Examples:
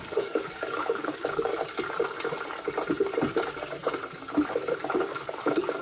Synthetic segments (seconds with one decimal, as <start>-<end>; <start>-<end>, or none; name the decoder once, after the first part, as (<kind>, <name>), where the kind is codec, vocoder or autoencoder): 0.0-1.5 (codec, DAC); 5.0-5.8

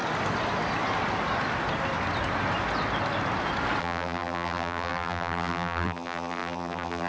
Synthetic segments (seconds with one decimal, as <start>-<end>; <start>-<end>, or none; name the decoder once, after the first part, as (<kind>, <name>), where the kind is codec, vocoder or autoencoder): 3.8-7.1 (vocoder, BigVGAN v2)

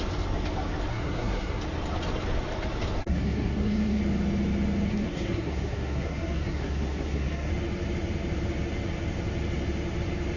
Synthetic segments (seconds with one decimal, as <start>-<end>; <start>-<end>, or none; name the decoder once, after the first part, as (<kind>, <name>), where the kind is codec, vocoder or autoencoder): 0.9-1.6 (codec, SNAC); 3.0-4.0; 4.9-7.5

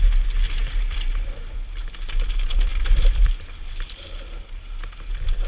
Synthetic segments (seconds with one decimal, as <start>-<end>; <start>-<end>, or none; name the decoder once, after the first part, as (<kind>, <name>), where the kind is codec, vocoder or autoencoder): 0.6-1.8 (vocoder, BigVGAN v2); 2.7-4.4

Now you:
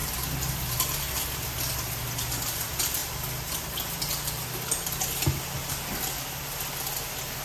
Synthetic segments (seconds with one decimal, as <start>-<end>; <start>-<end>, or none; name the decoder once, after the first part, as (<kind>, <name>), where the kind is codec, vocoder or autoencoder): none

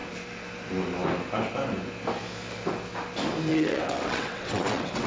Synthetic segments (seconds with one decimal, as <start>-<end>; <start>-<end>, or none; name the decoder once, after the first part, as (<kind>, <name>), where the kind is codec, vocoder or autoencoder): 3.5-5.1 (vocoder, WaveNeXt)

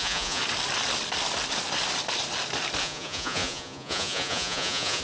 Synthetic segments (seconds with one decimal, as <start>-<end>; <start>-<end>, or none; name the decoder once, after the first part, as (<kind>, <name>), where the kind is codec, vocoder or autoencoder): 0.0-0.4 (vocoder, Vocos); 2.8-5.0